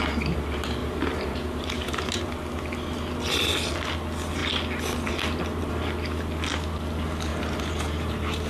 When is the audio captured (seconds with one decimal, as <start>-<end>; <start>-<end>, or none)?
0.0-0.8; 2.2-7.3